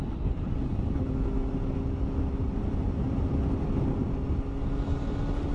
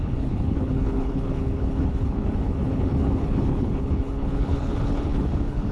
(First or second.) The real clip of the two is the first